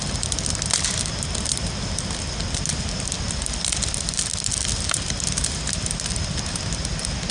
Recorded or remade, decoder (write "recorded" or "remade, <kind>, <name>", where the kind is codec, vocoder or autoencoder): recorded